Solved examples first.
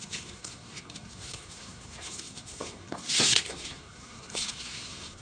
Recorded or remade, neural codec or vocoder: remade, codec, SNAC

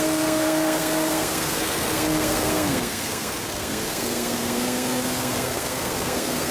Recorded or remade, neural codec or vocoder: remade, codec, SNAC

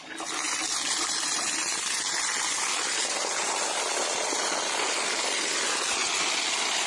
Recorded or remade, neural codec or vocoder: recorded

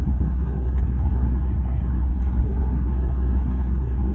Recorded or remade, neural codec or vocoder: remade, codec, SNAC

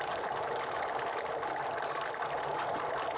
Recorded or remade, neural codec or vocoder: recorded